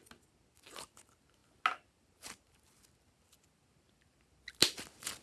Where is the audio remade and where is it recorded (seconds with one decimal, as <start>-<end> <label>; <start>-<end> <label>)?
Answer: 0.0-5.2 recorded